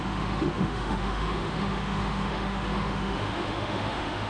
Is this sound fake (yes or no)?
yes